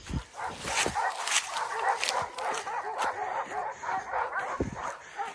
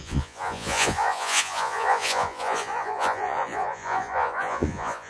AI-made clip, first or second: second